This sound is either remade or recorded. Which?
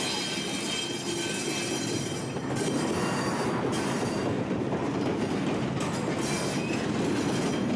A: recorded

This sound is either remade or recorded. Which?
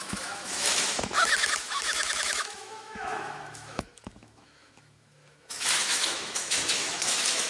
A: remade